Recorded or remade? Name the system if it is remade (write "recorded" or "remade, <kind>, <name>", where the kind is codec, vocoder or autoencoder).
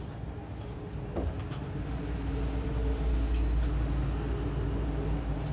recorded